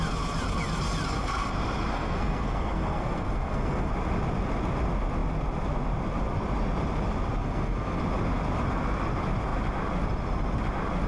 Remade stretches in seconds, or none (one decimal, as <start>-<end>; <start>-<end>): 1.9-3.9; 7.4-8.0